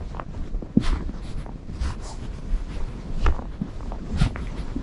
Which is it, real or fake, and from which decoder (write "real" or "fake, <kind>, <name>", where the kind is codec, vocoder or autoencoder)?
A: real